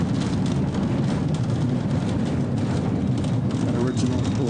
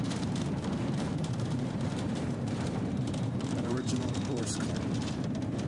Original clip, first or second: first